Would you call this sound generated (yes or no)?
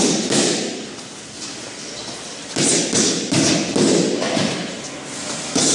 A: no